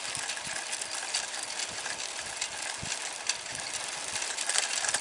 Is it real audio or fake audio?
real